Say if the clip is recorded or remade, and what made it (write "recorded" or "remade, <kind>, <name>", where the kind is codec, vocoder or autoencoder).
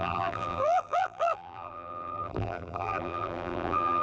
remade, vocoder, BigVGAN v2